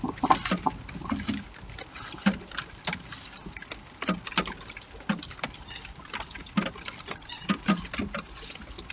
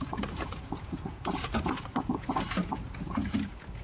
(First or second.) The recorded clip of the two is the first